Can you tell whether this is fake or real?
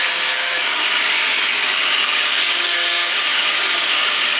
fake